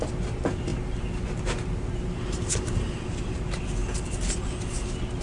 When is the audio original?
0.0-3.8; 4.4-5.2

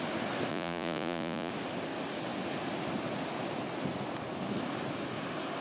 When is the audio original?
0.0-0.5; 1.5-5.6

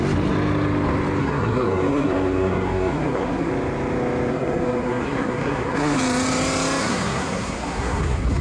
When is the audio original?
0.0-1.2; 3.5-4.3; 6.0-6.8

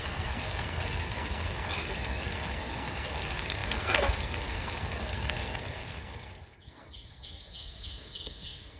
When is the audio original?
none

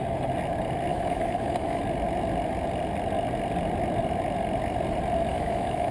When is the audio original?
0.0-0.9; 1.8-5.3

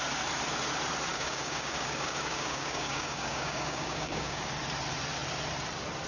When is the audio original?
0.0-1.1; 4.5-6.1